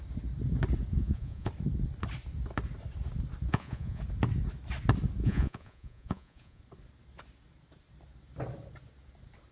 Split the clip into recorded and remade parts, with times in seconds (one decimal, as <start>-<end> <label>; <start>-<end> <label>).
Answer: 0.0-0.9 recorded; 0.9-1.5 remade; 1.5-3.5 recorded; 3.5-4.0 remade; 4.0-5.2 recorded; 5.2-6.6 remade; 6.6-9.5 recorded